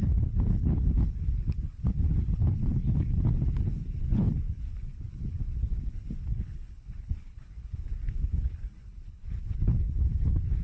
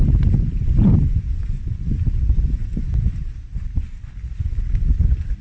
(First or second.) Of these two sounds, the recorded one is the second